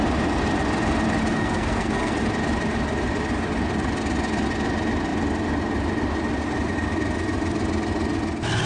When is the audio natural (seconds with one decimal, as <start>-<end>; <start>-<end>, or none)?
0.0-1.3; 2.2-8.7